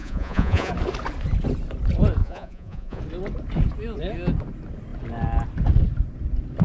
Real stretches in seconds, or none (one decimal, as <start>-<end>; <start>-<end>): 0.7-2.2; 3.0-6.6